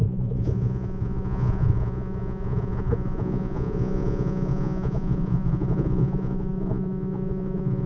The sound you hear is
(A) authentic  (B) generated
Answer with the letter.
B